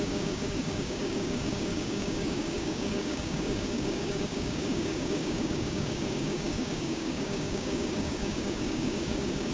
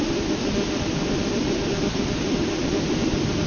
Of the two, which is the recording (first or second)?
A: second